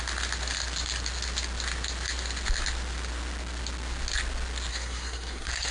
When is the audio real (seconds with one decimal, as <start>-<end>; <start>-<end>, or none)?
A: 0.0-4.7